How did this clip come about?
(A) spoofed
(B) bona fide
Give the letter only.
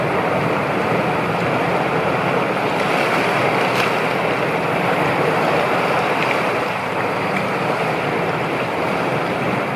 B